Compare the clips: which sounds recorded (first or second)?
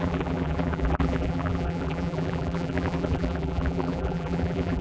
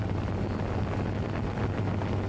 second